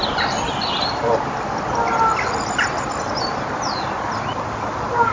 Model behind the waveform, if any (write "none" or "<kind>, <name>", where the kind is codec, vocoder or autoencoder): none